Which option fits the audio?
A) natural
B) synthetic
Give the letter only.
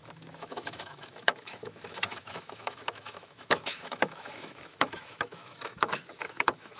B